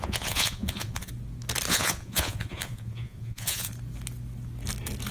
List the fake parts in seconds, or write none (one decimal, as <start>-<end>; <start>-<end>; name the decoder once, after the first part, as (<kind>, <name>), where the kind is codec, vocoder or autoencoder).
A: 0.0-1.1 (vocoder, Vocos); 1.7-3.7